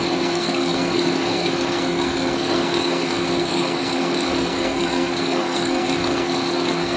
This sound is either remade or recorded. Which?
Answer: remade